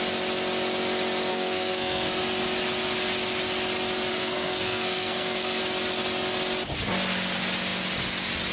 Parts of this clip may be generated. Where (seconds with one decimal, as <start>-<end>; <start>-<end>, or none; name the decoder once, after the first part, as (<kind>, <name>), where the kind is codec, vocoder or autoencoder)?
1.3-2.2 (codec, SNAC); 4.1-5.6